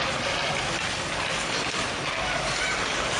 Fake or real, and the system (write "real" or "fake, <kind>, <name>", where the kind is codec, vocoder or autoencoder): real